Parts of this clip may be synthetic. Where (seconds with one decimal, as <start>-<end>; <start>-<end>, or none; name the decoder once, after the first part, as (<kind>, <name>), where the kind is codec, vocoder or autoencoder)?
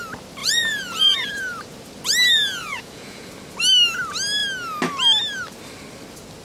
0.4-1.3 (vocoder, Vocos); 2.6-3.3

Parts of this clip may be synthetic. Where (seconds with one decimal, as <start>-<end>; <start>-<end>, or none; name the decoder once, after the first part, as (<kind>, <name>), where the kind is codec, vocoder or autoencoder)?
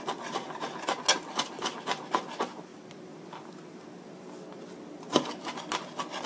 none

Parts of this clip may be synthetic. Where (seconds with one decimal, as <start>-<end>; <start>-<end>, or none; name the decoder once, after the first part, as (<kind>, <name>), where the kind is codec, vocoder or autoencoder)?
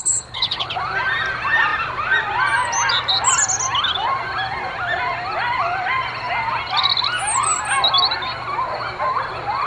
0.0-0.7 (codec, HILCodec)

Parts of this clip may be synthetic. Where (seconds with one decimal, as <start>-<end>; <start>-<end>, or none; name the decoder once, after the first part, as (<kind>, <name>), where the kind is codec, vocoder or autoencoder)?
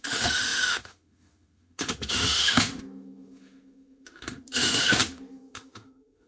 0.0-6.3 (autoencoder, DAC-VAE)